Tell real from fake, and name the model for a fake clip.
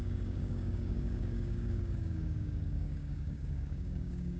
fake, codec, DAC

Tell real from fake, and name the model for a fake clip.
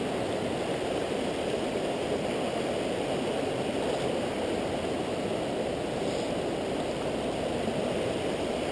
real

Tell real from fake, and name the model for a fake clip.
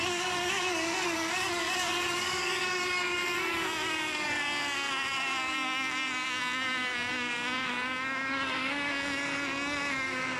fake, codec, DAC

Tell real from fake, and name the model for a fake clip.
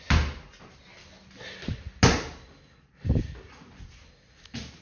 real